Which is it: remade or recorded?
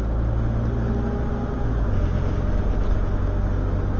recorded